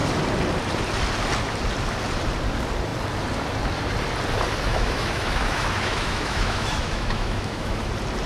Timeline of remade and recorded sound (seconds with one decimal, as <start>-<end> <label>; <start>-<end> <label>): 0.0-4.7 recorded; 4.7-7.9 remade; 7.9-8.3 recorded